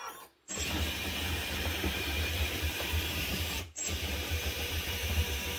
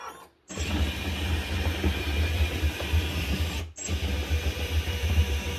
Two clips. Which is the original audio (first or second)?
second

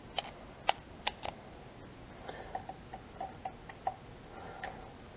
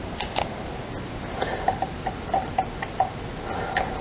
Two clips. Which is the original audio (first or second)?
first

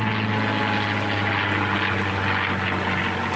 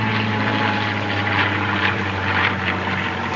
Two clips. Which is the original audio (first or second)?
first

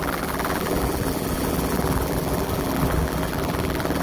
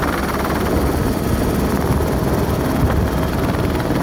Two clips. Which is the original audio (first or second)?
second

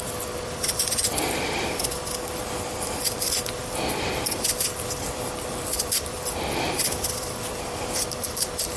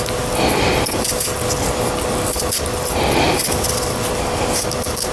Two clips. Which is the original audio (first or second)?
second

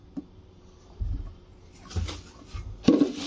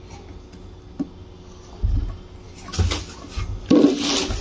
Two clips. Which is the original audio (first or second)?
second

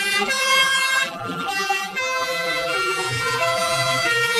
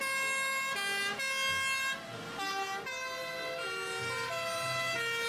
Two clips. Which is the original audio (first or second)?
second